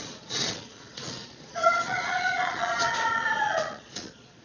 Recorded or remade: remade